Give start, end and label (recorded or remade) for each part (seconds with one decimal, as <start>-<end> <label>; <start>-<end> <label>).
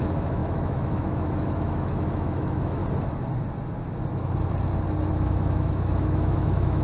0.0-2.8 remade; 2.8-5.1 recorded; 5.1-6.8 remade